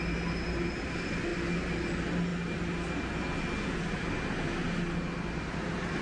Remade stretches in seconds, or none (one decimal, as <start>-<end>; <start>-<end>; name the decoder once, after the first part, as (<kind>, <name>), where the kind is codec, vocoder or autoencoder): none

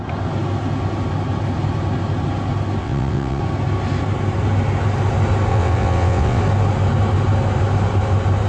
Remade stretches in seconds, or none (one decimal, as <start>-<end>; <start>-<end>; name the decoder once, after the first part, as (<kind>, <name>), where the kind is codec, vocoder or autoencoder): 2.8-3.4 (vocoder, WaveNeXt); 5.5-6.4

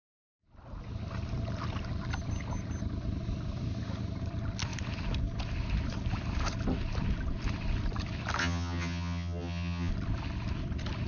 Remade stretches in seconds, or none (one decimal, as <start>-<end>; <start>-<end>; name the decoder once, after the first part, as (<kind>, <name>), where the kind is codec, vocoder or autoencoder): 8.4-9.9 (vocoder, HiFi-GAN)

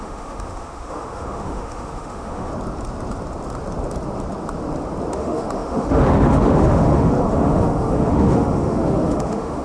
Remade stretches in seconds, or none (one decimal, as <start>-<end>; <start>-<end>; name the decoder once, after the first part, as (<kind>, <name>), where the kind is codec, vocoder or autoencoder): 0.0-2.5 (autoencoder, DAC-VAE); 5.1-9.6

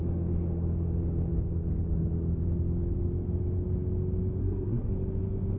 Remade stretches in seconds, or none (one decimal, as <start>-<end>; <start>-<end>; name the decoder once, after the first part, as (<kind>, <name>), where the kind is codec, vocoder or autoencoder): 4.4-4.9 (codec, SNAC)

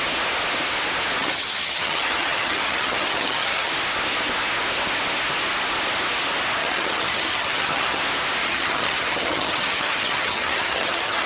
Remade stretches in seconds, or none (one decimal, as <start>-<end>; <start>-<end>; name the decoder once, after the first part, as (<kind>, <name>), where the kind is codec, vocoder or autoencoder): 1.2-3.7 (vocoder, HiFi-GAN); 6.6-8.0; 8.4-11.3

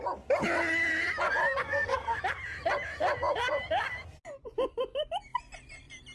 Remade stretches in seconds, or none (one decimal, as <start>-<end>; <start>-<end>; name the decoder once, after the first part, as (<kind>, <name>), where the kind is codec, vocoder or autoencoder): 1.6-2.2 (codec, SNAC)